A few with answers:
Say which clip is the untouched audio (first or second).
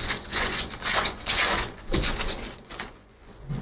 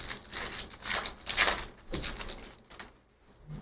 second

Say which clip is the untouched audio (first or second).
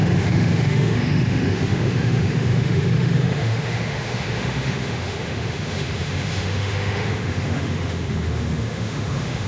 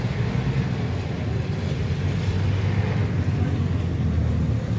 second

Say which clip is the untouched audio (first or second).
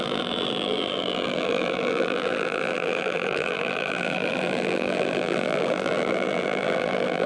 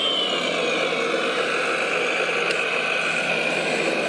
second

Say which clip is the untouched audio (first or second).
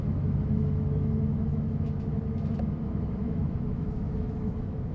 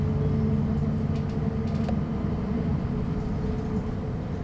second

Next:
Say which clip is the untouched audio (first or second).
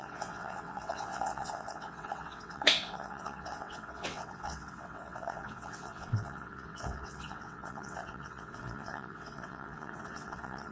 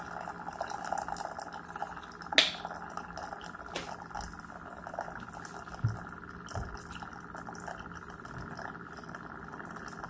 second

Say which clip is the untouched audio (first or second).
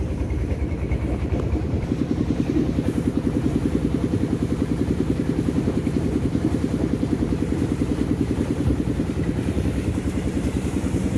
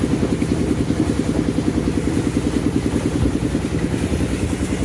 second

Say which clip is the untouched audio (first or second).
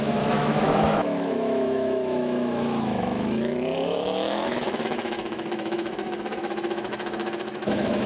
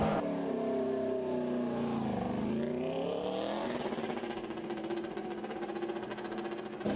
second